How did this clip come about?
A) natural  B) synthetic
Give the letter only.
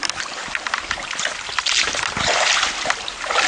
A